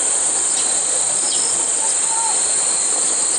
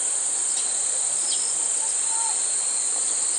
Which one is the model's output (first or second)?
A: first